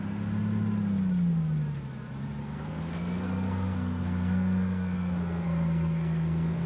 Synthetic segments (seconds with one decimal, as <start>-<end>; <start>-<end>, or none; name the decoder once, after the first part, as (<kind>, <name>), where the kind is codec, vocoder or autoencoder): 2.4-6.7 (codec, SNAC)